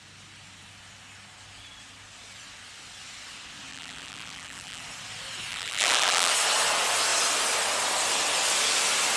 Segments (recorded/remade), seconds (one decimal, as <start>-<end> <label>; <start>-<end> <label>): 0.0-3.7 recorded; 3.7-4.8 remade; 4.8-5.5 recorded; 5.5-6.3 remade; 6.3-9.2 recorded